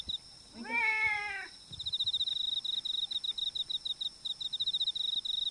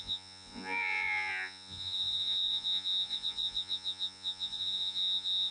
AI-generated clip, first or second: second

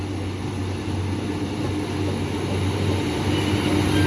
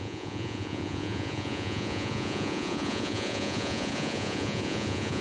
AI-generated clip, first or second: second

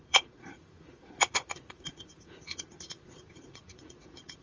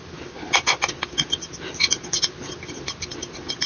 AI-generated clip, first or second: first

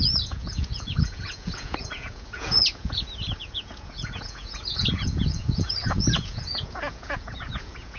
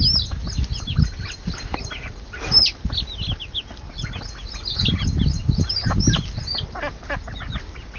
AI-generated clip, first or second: first